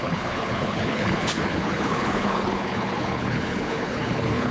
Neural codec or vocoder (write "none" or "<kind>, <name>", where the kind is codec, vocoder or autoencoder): codec, HILCodec